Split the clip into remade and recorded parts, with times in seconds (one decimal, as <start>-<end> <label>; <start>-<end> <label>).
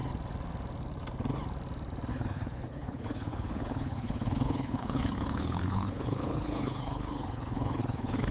0.0-2.1 recorded; 2.1-8.3 remade